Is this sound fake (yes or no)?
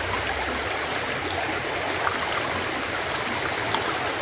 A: no